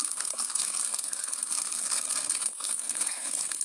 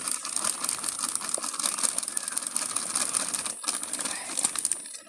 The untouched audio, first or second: second